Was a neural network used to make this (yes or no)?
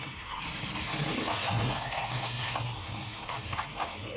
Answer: yes